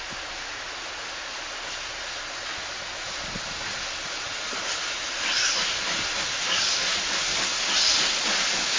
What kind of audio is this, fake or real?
real